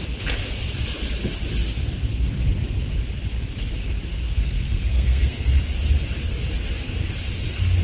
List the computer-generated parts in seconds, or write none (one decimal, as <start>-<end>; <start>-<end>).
4.1-5.6